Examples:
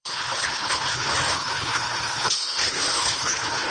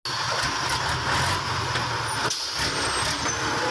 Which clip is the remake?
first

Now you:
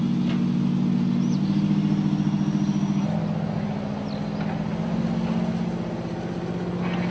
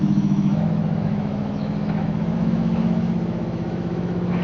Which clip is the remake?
second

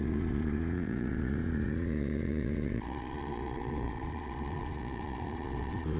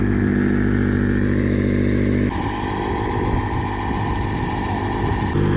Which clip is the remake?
first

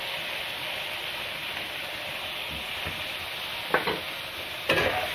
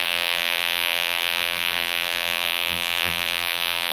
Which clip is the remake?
second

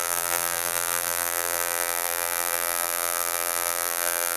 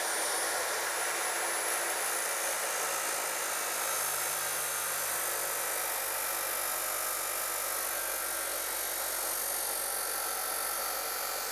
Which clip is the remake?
first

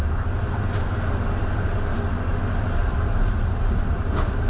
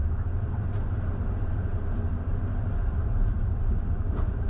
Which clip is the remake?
second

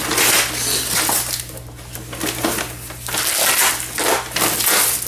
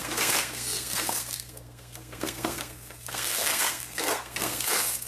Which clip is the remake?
second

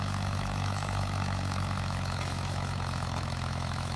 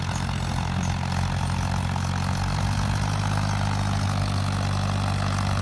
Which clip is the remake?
first